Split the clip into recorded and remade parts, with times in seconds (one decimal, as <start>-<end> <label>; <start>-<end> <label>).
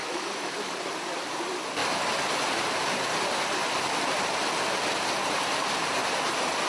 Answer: 0.0-0.7 remade; 0.7-6.7 recorded